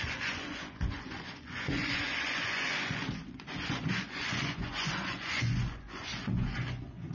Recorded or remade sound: remade